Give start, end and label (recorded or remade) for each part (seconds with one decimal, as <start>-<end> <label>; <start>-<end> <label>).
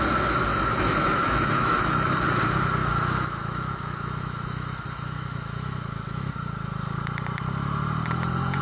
0.0-0.5 recorded; 0.5-2.4 remade; 2.4-2.8 recorded; 2.8-6.3 remade; 6.3-8.6 recorded